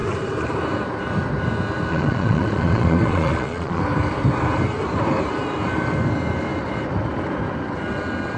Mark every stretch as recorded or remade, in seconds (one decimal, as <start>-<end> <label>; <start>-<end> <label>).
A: 0.0-1.9 recorded; 1.9-3.8 remade; 3.8-8.4 recorded